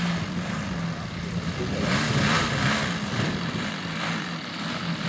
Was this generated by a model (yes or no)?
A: no